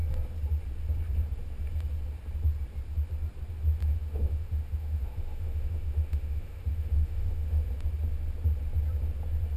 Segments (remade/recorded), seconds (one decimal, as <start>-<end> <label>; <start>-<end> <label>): 0.0-3.8 recorded; 3.8-7.7 remade; 7.7-9.6 recorded